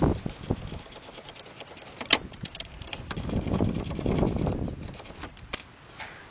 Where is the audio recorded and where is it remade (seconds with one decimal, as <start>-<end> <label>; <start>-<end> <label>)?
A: 0.0-6.3 recorded